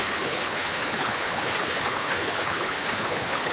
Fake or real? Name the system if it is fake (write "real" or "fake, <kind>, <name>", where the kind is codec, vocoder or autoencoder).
fake, codec, HILCodec